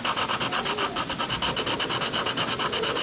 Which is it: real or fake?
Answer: real